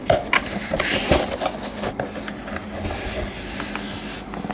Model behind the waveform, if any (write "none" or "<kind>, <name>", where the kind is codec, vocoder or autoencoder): none